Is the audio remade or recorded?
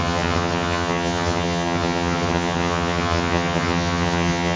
remade